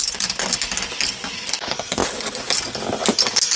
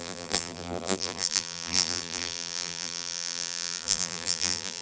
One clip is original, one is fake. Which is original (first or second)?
first